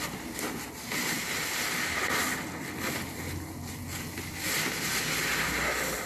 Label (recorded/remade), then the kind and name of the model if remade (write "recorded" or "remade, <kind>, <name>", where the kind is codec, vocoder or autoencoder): recorded